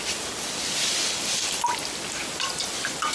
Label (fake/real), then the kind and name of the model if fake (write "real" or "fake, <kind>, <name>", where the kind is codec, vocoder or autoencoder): real